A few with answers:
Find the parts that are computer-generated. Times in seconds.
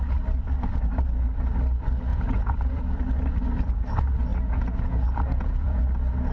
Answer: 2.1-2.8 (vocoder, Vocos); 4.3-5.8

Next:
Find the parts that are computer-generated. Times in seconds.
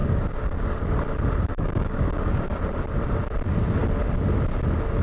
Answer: 0.0-0.7 (codec, DAC); 1.5-2.6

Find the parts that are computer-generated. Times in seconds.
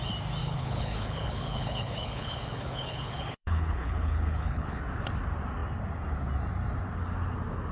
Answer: 0.4-4.8 (codec, HILCodec)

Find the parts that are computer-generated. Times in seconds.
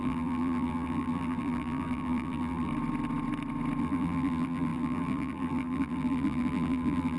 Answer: 0.0-2.7 (vocoder, BigVGAN v2); 3.8-7.2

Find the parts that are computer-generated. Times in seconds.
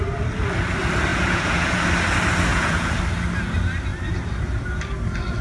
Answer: 1.1-1.8 (vocoder, Vocos); 2.5-3.0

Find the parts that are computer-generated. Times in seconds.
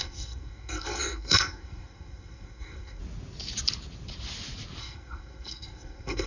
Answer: 0.0-3.0 (codec, SNAC); 4.8-6.3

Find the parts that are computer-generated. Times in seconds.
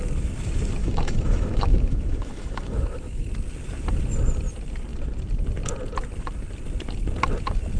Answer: 0.8-3.3 (autoencoder, DAC-VAE)